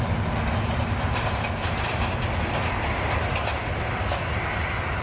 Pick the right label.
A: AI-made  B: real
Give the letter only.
B